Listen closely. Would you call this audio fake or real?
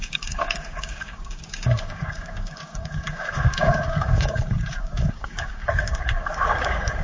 fake